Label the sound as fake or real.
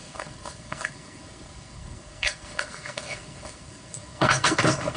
fake